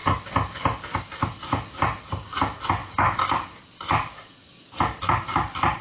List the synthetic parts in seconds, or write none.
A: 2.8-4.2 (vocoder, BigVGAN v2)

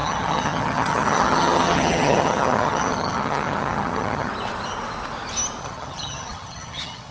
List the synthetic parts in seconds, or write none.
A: 0.0-4.3 (vocoder, HiFi-GAN); 5.6-7.1

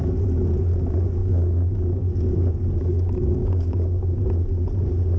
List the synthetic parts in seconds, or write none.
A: 1.2-2.1 (codec, DAC); 2.8-4.2